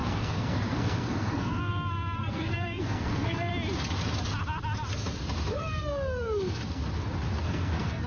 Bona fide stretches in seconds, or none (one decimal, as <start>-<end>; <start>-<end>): 3.5-5.5; 6.8-7.4